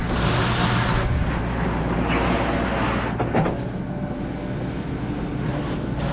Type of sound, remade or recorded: recorded